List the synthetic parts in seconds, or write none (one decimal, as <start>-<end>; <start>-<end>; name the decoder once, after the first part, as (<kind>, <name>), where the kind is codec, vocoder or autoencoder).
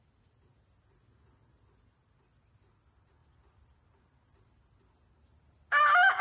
none